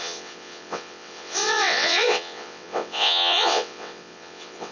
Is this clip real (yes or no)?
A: no